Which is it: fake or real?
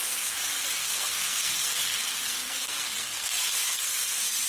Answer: fake